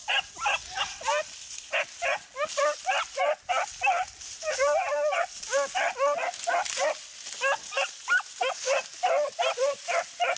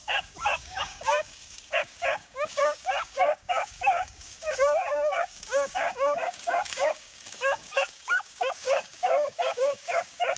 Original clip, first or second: first